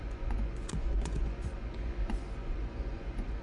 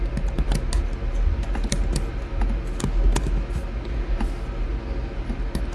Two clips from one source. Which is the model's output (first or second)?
first